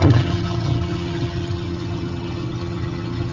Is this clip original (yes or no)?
no